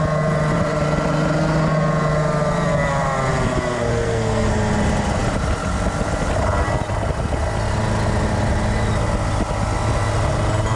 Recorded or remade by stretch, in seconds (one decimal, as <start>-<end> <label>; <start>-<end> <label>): 0.0-3.9 recorded; 3.9-4.5 remade; 4.5-10.8 recorded